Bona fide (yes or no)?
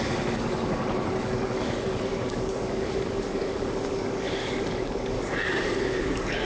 no